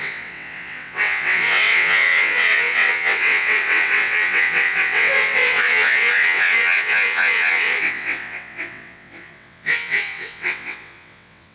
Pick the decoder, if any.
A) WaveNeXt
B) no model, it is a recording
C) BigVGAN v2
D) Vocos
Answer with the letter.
A